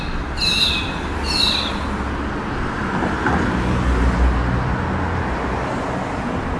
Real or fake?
real